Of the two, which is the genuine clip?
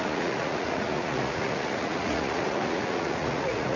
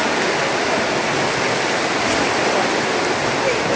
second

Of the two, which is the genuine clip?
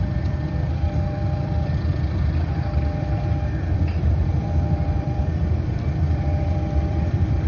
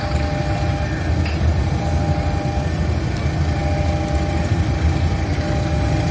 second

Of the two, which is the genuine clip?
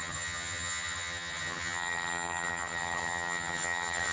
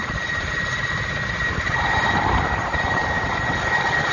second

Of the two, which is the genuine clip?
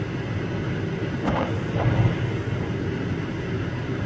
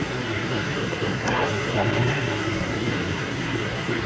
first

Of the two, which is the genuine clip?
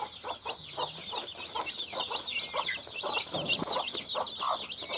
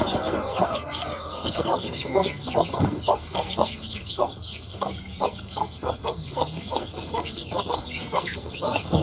first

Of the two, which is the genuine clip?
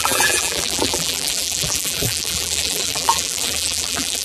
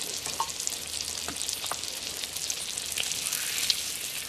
second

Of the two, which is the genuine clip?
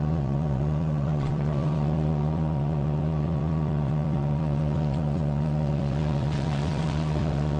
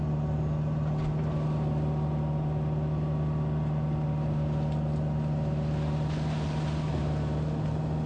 second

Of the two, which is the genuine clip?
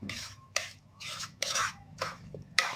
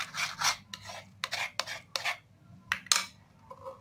second